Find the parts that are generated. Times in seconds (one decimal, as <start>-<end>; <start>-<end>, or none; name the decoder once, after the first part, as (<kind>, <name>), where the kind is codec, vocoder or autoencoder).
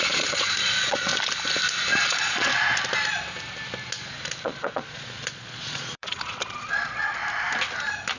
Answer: 0.0-1.1 (vocoder, Vocos); 2.1-2.5; 4.4-7.2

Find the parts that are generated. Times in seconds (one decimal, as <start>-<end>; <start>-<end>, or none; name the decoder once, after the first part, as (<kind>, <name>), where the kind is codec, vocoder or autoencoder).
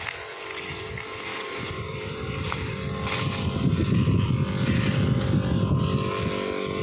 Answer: 1.3-2.7 (vocoder, BigVGAN v2)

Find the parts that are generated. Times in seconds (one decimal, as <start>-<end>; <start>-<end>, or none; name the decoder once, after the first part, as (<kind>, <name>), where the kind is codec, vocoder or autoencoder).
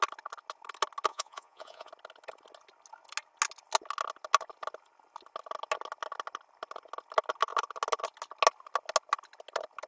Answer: 1.1-1.9 (vocoder, Vocos)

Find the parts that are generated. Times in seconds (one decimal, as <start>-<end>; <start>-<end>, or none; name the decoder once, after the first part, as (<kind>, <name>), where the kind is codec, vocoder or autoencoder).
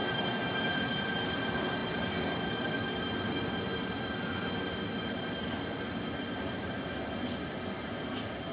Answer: 0.0-0.7 (autoencoder, DAC-VAE)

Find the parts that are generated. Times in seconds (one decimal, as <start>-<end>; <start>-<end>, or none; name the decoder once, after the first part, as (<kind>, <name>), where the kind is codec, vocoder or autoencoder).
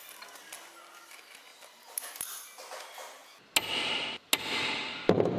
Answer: none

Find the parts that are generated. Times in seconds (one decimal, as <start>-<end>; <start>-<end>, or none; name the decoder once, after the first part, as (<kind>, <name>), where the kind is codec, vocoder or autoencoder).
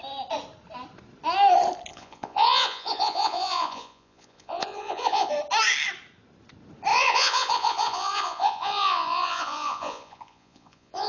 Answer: 1.9-5.3 (vocoder, Vocos); 6.9-11.1